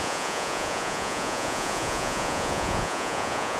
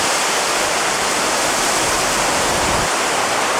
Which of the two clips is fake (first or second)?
first